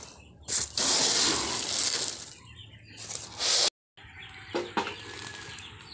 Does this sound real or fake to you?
real